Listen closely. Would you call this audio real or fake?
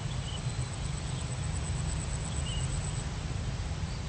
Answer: real